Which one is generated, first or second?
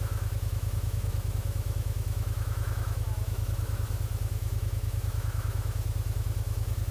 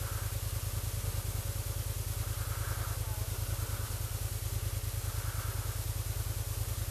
first